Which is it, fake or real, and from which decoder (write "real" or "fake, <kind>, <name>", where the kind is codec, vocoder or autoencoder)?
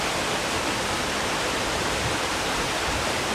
real